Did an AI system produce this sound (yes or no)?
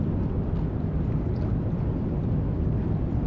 no